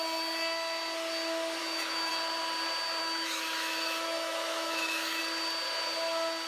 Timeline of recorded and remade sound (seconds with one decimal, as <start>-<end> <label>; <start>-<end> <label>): 0.0-1.6 recorded; 1.6-2.1 remade; 2.1-3.0 recorded; 3.0-5.2 remade; 5.2-6.5 recorded